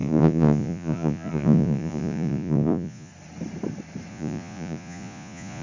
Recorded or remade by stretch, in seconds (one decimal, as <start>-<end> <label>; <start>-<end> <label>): 0.0-3.1 remade; 3.1-4.1 recorded; 4.1-5.6 remade